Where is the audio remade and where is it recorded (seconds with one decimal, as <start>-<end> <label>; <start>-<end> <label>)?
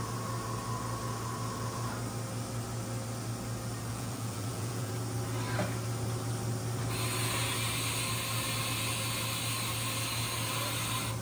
0.0-3.9 recorded; 3.9-4.9 remade; 4.9-11.2 recorded